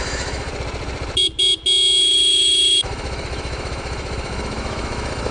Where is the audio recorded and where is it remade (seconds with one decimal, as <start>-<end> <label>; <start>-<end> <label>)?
0.0-0.5 remade; 0.5-2.0 recorded; 2.0-5.3 remade